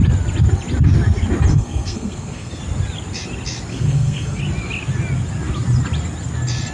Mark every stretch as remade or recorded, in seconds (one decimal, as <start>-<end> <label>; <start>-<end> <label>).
0.0-1.5 recorded; 1.5-2.6 remade; 2.6-3.7 recorded; 3.7-4.4 remade; 4.4-6.7 recorded